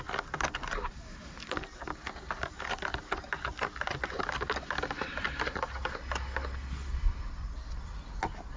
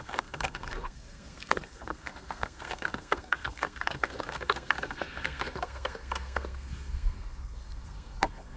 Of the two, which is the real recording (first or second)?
first